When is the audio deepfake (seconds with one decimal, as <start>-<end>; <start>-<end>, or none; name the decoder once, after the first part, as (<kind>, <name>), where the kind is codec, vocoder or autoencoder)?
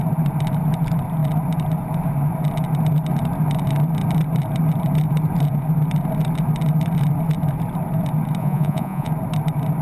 8.4-9.1 (vocoder, Vocos)